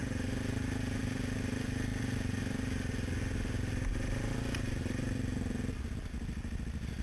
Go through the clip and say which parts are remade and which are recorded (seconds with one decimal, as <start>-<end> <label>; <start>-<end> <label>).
0.0-7.0 recorded